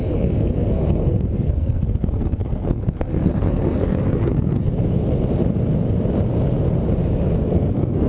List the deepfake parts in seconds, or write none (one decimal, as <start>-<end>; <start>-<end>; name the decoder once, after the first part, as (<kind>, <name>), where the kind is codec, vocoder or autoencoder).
0.0-4.7 (codec, SNAC); 7.5-8.1